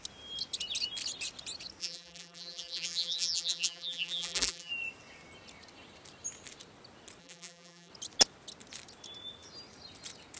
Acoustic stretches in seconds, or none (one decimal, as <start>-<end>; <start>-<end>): 0.0-1.8; 4.7-7.2; 7.9-10.4